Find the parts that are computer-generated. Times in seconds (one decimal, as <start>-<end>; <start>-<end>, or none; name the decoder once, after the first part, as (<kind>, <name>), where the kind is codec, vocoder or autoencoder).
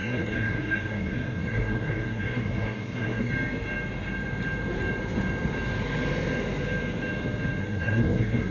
0.0-3.3 (codec, SNAC); 7.6-8.5